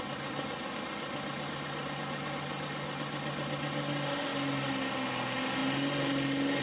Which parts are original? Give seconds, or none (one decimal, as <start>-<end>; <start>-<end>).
0.0-6.6